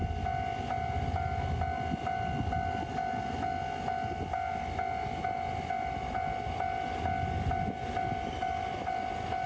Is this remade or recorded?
recorded